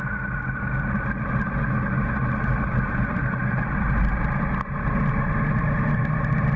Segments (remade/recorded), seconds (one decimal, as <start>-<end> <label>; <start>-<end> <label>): 0.0-6.6 recorded